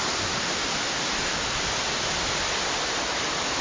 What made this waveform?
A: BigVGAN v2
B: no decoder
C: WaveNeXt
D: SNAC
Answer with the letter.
A